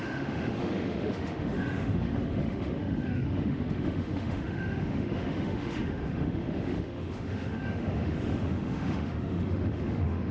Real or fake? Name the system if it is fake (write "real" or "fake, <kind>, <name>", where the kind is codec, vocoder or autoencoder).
fake, autoencoder, DAC-VAE